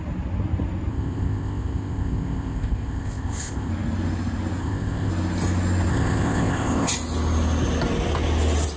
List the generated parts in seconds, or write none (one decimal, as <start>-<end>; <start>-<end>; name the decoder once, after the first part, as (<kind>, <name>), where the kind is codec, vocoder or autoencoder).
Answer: 0.9-3.7 (codec, ZipCodec); 4.6-5.1; 5.9-6.9